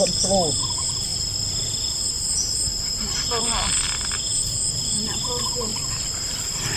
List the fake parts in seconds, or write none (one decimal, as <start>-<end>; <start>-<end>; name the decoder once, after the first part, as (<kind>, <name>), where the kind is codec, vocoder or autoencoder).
1.1-1.9 (vocoder, BigVGAN v2); 5.7-6.8